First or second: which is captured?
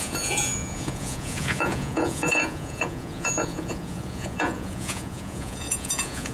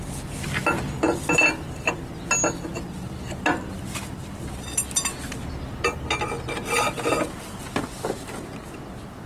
second